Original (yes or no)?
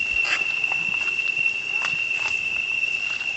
yes